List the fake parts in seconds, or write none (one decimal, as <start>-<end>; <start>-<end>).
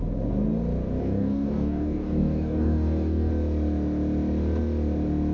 1.0-3.3